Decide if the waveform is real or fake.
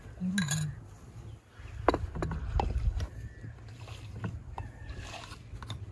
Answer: real